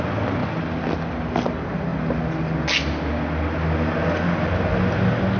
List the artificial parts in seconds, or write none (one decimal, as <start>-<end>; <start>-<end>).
0.4-0.9